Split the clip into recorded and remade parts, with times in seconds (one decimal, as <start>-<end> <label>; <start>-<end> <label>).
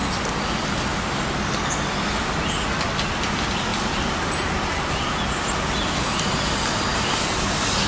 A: 0.0-7.9 recorded